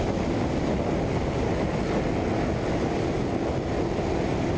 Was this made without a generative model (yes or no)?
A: yes